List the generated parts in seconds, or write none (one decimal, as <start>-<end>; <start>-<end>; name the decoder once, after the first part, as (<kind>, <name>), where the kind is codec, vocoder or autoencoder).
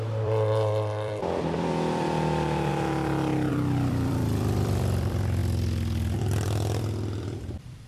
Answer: 0.0-2.7 (vocoder, BigVGAN v2); 3.5-5.4; 6.2-7.9